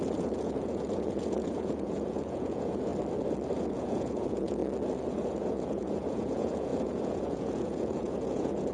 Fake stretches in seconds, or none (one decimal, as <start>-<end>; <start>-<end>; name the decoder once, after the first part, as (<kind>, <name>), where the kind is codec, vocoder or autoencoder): 0.0-2.9 (vocoder, Vocos); 3.6-4.6; 5.1-8.7